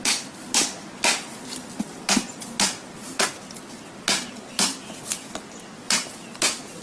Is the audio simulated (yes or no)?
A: no